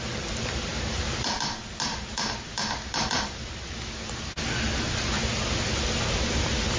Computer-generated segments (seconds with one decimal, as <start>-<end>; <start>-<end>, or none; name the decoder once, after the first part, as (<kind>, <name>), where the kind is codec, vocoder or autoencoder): none